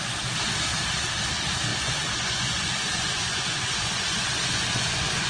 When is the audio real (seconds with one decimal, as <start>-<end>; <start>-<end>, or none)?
0.0-1.7